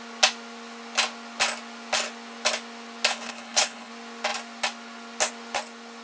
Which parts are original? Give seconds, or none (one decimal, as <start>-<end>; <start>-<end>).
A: 0.0-3.1; 3.9-6.0